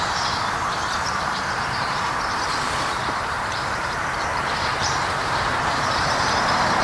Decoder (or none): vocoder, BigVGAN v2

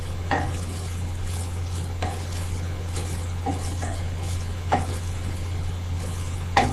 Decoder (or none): codec, HILCodec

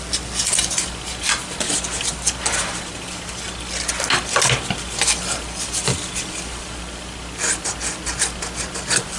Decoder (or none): none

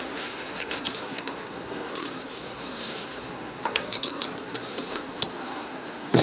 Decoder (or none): codec, SNAC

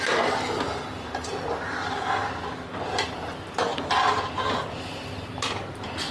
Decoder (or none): none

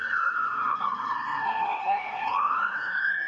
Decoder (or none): codec, SNAC